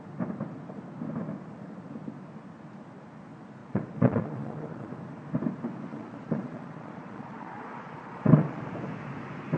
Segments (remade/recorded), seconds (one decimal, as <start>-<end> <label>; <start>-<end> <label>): 0.0-3.6 recorded; 3.6-4.9 remade; 4.9-5.9 recorded; 5.9-8.6 remade; 8.6-9.6 recorded